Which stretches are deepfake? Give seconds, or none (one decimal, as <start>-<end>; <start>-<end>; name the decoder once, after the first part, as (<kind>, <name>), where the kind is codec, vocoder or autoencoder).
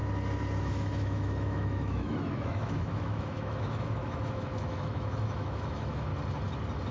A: 0.6-6.1 (autoencoder, DAC-VAE)